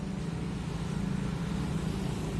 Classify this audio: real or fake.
real